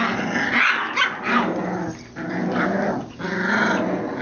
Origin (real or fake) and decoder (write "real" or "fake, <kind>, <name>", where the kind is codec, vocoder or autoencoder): real